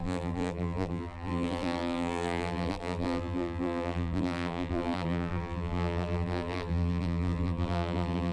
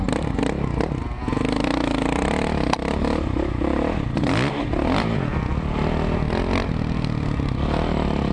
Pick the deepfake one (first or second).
first